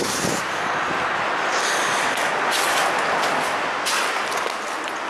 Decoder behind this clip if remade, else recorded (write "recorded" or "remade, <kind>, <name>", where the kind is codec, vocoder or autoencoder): recorded